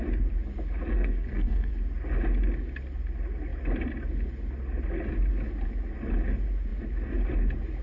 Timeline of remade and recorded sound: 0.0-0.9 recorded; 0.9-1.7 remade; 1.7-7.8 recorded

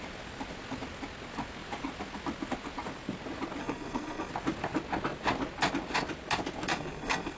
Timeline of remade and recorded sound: 0.0-3.6 recorded; 3.6-4.3 remade; 4.3-6.7 recorded; 6.7-7.4 remade

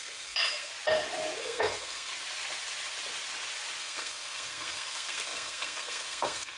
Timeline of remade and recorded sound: 0.0-0.7 remade; 0.7-1.4 recorded; 1.4-2.1 remade; 2.1-3.8 recorded; 3.8-6.6 remade

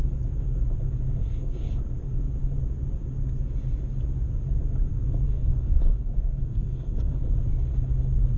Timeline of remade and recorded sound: 0.0-1.2 recorded; 1.2-1.7 remade; 1.7-4.9 recorded; 4.9-7.3 remade; 7.3-8.4 recorded

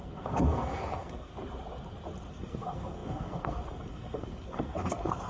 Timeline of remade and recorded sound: 0.0-1.3 remade; 1.3-2.3 recorded; 2.3-5.3 remade